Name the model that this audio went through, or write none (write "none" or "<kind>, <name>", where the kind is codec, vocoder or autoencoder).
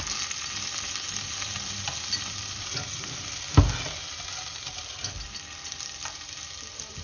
none